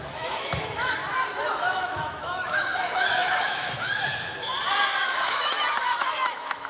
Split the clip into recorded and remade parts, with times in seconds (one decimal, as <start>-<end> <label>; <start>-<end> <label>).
0.0-1.0 remade; 1.0-1.5 recorded; 1.5-4.5 remade; 4.5-5.0 recorded; 5.0-6.7 remade